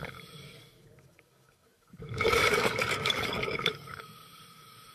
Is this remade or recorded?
remade